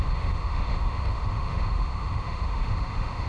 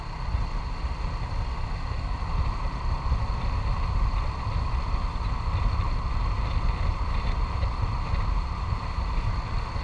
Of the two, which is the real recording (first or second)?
second